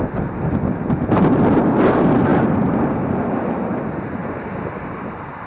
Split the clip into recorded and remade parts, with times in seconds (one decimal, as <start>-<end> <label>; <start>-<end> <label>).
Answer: 0.0-5.5 recorded